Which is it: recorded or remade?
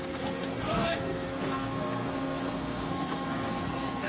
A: remade